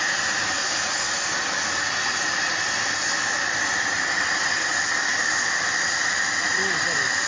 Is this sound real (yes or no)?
yes